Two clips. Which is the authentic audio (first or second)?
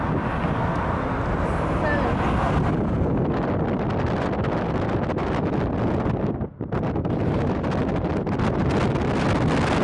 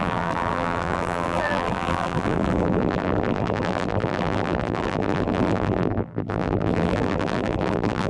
first